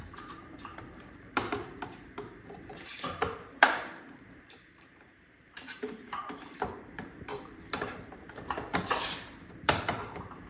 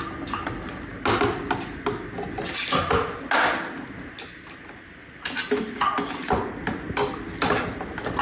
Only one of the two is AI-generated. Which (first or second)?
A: first